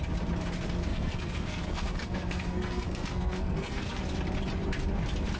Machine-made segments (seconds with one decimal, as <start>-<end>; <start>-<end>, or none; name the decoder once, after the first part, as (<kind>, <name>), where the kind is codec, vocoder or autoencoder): 0.9-4.0 (codec, SNAC)